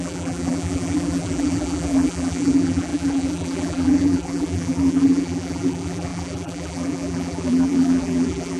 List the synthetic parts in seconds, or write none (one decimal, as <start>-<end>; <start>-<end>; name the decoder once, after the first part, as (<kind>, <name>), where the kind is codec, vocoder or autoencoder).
0.0-8.6 (vocoder, BigVGAN v2)